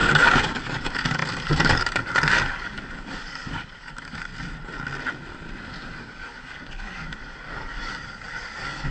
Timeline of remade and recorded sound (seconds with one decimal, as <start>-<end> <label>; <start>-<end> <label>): 0.0-4.3 remade; 4.3-5.9 recorded; 5.9-8.9 remade